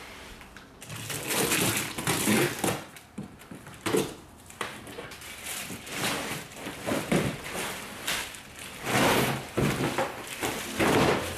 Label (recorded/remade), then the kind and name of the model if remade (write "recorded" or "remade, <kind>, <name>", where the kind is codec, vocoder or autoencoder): remade, vocoder, BigVGAN v2